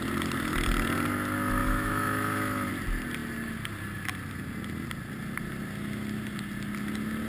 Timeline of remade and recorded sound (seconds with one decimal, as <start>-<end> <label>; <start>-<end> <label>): 0.0-1.6 recorded; 1.6-2.7 remade; 2.7-7.3 recorded